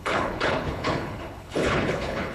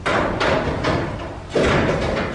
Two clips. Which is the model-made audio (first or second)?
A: first